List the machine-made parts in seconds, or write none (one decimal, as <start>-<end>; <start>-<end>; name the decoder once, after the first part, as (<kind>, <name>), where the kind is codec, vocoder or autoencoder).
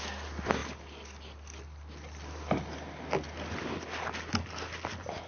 none